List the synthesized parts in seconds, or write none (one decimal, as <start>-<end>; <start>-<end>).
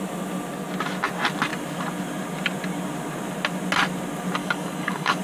4.4-5.2